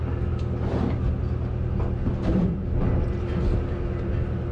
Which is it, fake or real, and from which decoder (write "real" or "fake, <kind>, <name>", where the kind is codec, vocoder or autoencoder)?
real